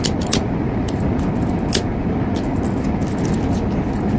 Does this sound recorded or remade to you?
recorded